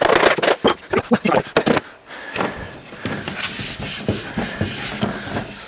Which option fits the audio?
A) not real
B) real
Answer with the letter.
B